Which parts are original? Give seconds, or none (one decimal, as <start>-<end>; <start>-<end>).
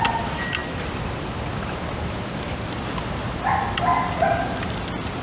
0.0-5.2